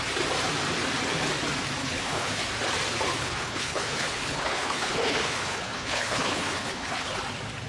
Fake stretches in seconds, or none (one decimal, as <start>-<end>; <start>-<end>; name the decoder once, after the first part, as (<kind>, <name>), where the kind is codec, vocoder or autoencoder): 1.8-2.4 (codec, HILCodec); 3.2-7.2